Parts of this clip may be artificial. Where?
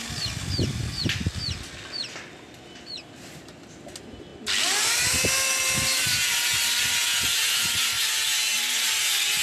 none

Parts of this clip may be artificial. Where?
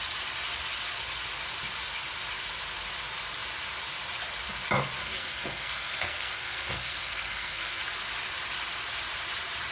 5.0-7.8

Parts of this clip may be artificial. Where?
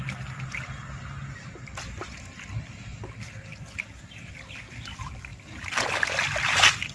2.9-4.0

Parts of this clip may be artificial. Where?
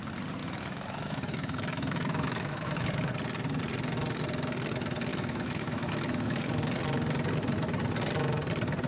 0.4-3.1; 5.1-6.4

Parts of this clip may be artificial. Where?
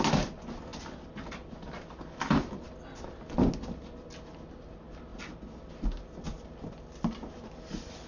5.1-5.7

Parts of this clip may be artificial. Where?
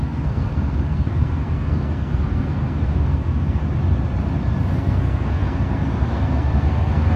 0.0-3.6; 4.7-7.2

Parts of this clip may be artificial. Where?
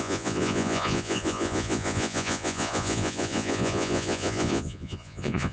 0.0-5.5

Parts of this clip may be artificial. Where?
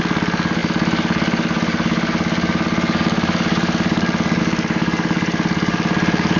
0.0-6.4